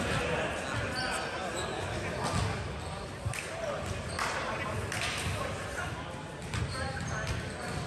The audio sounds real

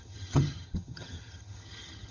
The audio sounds fake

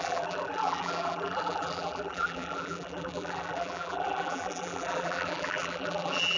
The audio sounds fake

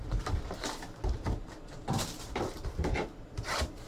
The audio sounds fake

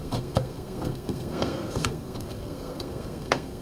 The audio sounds fake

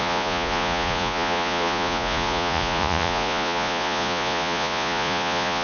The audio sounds fake